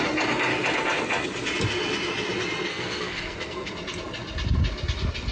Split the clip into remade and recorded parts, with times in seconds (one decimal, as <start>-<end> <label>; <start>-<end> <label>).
0.0-2.7 recorded; 2.7-3.7 remade; 3.7-5.3 recorded